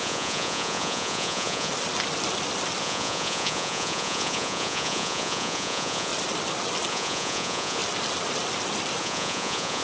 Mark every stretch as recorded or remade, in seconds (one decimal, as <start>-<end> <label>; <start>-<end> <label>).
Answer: 0.0-1.7 remade; 1.7-2.8 recorded; 2.8-6.1 remade; 6.1-6.9 recorded; 6.9-7.8 remade; 7.8-9.0 recorded; 9.0-9.8 remade